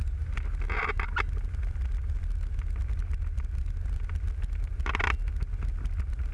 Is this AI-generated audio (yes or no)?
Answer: no